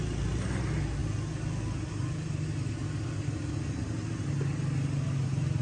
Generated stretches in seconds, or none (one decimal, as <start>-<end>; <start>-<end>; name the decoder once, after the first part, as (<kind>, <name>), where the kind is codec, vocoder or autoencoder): none